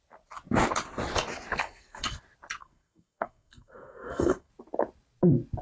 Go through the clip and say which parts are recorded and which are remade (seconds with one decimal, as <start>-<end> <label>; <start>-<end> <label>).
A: 0.0-1.6 recorded; 1.6-2.2 remade; 2.2-2.6 recorded; 2.6-4.5 remade; 4.5-5.6 recorded